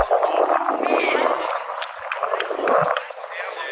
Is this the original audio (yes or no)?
yes